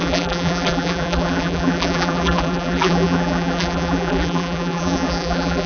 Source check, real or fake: fake